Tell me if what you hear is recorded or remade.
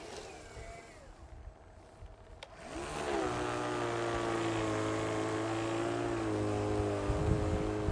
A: recorded